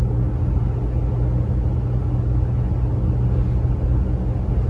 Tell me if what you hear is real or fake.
real